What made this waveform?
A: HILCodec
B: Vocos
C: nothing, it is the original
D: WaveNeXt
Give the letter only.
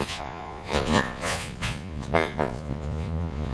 B